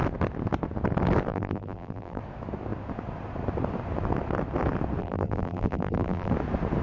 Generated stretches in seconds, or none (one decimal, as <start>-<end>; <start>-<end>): 1.3-2.2; 5.0-6.3